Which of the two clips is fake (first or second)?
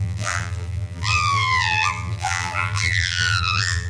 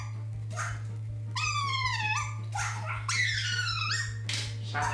first